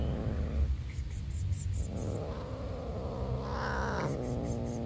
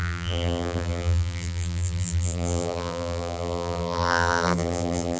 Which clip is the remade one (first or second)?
second